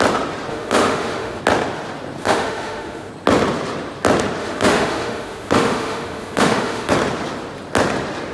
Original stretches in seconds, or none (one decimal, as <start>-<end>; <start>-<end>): 0.0-0.5; 1.4-2.2; 3.1-4.4; 6.9-8.3